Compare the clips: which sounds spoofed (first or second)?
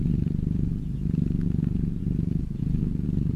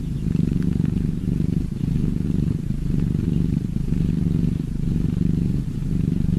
second